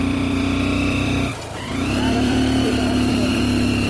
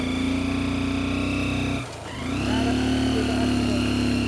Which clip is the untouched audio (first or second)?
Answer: second